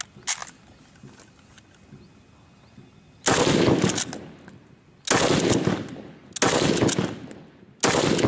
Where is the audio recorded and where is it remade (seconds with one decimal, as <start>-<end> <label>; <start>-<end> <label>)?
0.0-8.3 recorded